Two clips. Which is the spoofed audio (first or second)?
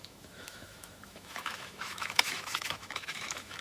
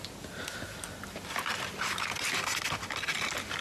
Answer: first